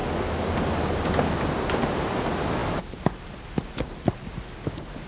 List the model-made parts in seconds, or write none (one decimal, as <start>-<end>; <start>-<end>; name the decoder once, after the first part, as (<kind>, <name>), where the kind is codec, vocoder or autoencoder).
none